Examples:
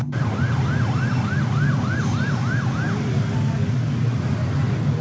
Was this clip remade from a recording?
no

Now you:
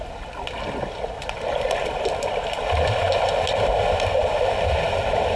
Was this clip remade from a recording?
no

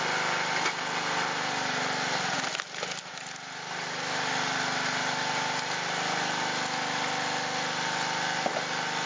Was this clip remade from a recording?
no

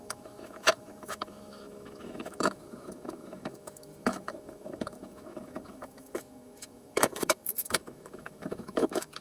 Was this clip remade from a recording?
yes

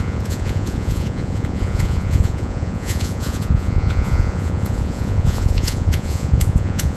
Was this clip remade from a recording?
yes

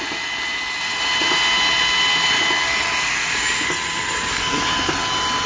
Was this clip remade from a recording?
no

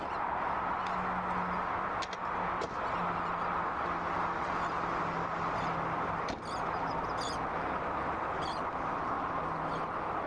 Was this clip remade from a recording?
no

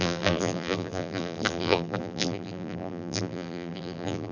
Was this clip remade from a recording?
yes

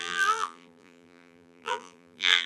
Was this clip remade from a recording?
yes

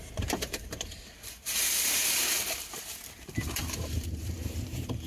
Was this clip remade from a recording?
yes